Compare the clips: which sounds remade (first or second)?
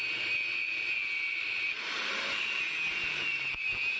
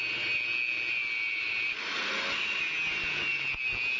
first